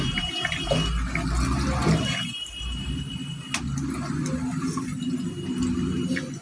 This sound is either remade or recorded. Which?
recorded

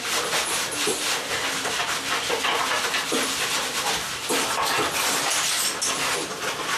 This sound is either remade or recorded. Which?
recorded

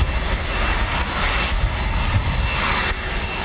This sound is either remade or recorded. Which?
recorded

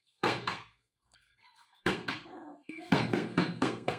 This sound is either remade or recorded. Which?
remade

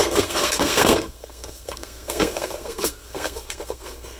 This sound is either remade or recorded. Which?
remade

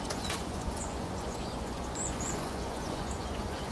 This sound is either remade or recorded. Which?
remade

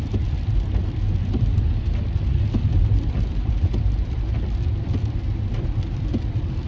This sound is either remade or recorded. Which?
remade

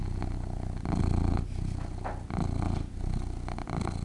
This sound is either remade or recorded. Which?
recorded